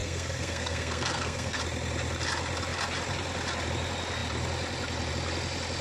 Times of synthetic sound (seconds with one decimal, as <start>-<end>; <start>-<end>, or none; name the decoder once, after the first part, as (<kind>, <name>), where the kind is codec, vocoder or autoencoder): 0.0-1.6 (codec, SNAC)